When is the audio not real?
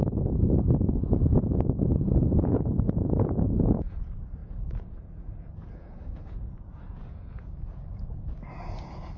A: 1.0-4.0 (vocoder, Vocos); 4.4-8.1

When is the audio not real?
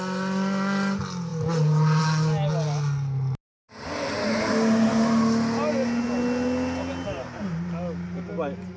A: none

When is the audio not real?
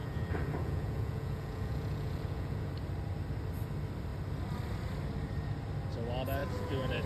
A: 0.0-2.7 (vocoder, Vocos); 6.4-7.1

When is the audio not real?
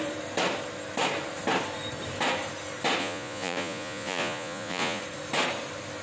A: 3.0-5.0 (vocoder, Vocos)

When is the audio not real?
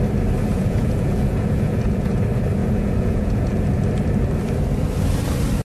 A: 0.5-2.2 (vocoder, Vocos); 2.6-3.9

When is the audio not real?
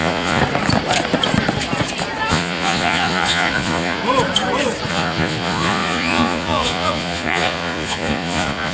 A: 0.0-0.4 (vocoder, Vocos); 2.3-4.0; 4.9-8.7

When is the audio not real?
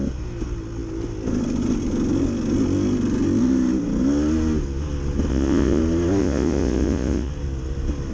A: 5.3-5.8 (vocoder, Vocos); 6.2-7.3